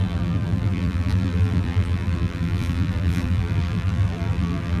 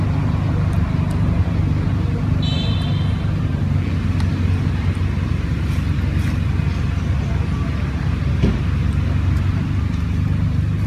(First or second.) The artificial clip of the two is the first